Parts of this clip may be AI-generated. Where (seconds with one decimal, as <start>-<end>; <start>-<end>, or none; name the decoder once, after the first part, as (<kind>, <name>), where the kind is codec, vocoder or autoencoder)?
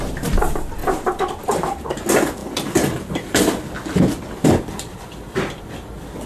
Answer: 0.8-1.3 (vocoder, BigVGAN v2); 2.4-5.6